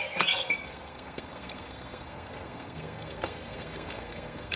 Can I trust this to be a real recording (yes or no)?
no